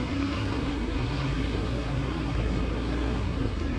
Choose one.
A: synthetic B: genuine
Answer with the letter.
A